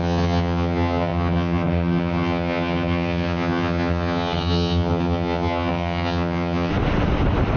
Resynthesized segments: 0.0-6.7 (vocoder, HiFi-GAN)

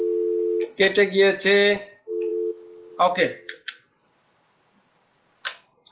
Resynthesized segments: 2.3-2.9 (autoencoder, DAC-VAE)